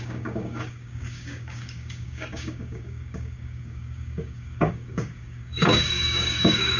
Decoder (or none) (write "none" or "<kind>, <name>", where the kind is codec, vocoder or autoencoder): codec, DAC